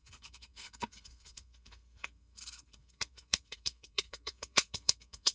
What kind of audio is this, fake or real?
fake